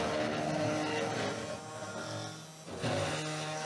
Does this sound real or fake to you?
real